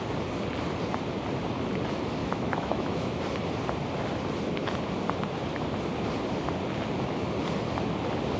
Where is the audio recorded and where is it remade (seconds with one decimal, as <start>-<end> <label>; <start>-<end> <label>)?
0.0-2.2 recorded; 2.2-3.2 remade; 3.2-8.4 recorded